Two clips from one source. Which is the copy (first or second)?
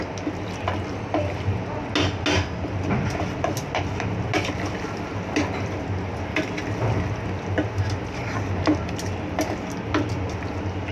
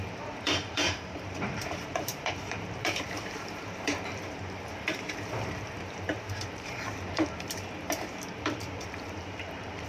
second